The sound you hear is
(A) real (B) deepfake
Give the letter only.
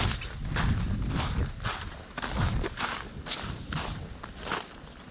A